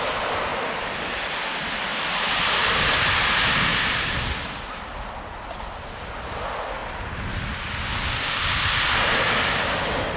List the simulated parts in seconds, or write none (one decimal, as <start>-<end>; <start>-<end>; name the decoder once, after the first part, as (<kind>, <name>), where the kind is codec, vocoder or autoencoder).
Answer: none